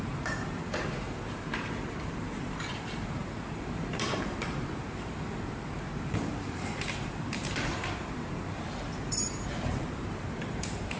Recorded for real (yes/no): no